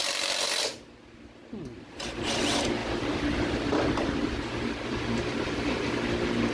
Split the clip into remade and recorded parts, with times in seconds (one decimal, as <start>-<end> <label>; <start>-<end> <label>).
0.0-0.6 remade; 0.6-2.8 recorded; 2.8-5.9 remade; 5.9-6.5 recorded